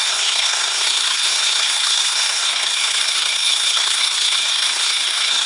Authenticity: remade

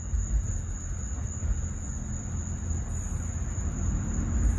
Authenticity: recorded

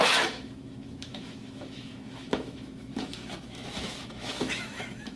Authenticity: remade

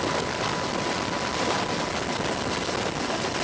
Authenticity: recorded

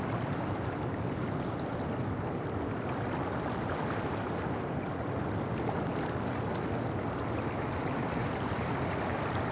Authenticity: recorded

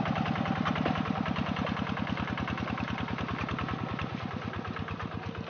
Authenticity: recorded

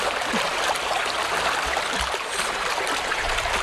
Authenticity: recorded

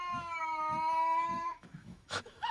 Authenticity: remade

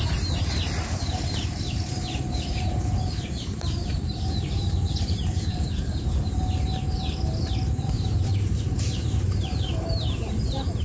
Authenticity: remade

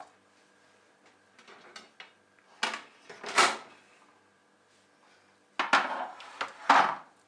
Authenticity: recorded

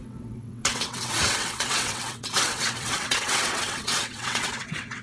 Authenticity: remade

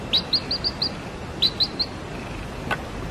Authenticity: recorded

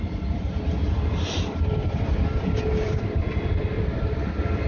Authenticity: remade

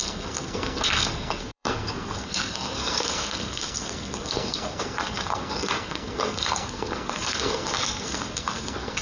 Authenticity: remade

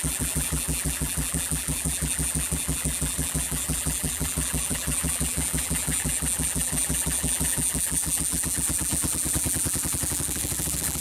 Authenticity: remade